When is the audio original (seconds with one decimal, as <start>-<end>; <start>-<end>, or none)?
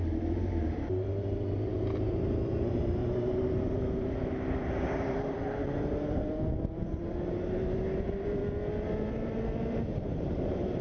8.4-9.1